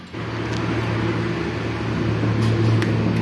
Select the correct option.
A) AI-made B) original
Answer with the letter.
B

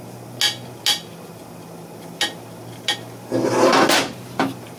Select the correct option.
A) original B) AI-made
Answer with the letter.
A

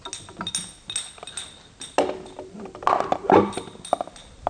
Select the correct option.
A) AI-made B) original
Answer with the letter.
B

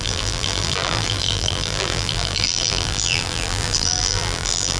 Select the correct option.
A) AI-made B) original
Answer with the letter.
A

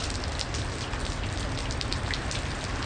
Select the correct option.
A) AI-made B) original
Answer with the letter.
B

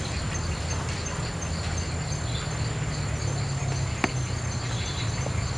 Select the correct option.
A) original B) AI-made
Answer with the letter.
A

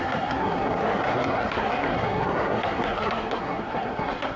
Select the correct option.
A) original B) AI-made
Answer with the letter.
B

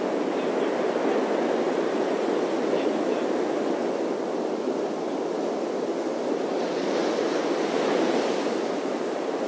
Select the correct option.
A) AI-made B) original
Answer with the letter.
B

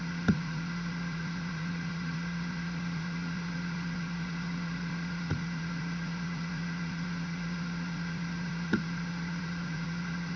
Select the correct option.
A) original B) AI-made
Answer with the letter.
B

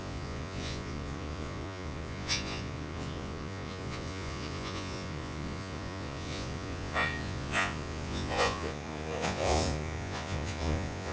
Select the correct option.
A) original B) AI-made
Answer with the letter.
B